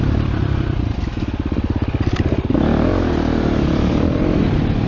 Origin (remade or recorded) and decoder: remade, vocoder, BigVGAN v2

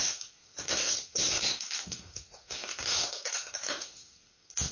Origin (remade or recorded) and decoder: remade, codec, SNAC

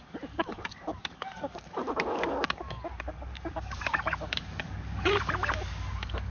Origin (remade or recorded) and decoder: remade, codec, DAC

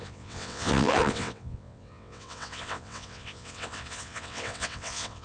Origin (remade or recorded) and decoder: remade, vocoder, WaveNeXt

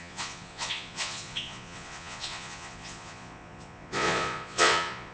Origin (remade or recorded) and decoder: remade, vocoder, Vocos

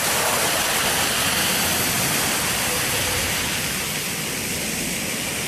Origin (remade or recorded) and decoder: recorded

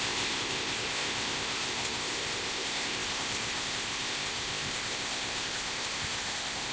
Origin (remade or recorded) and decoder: remade, codec, ZipCodec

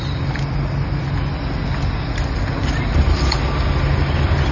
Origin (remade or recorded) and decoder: recorded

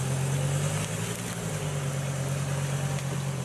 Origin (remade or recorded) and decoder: recorded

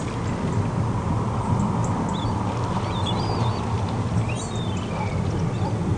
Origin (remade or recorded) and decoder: recorded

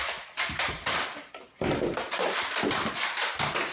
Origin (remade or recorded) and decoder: recorded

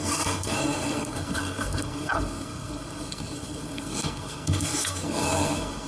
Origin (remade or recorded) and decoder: remade, codec, SNAC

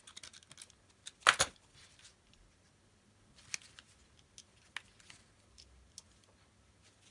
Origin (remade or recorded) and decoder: recorded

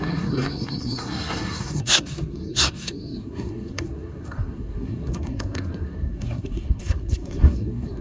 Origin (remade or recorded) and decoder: remade, codec, SNAC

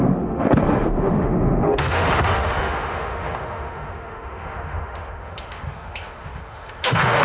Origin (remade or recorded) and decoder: remade, autoencoder, DAC-VAE